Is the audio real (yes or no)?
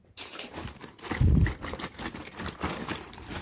no